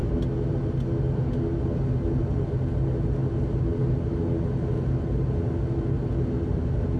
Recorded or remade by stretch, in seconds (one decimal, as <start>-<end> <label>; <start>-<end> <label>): 0.0-7.0 recorded